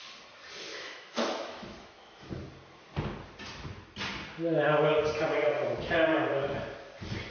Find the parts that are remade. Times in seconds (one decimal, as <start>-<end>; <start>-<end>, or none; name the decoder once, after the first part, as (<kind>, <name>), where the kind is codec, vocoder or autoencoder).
0.7-2.3 (autoencoder, DAC-VAE)